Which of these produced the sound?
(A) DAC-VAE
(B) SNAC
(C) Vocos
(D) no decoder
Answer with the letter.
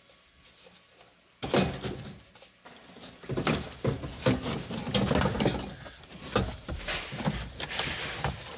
D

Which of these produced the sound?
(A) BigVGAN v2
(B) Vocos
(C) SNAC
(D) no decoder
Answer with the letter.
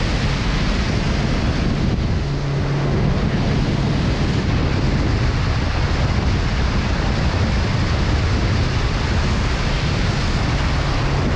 D